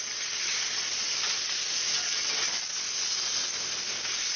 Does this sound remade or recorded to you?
recorded